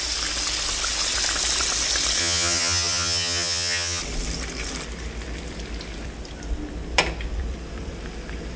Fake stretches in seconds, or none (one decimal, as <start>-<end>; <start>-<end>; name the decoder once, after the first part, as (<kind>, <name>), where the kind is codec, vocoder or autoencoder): 2.2-4.0 (vocoder, HiFi-GAN)